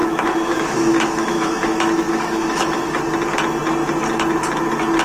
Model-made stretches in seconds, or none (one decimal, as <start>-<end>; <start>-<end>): 0.0-3.0